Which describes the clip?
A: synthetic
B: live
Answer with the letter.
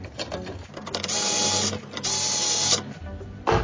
B